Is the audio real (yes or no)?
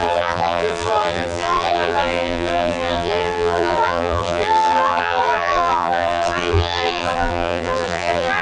no